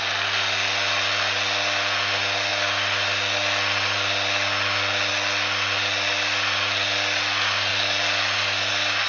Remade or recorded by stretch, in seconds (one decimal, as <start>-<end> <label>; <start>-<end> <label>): 0.0-9.1 recorded